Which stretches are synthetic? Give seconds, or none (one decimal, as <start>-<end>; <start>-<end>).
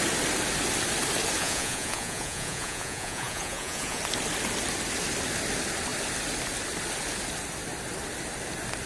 1.4-4.0